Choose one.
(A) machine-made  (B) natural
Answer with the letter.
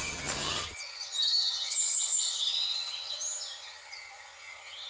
A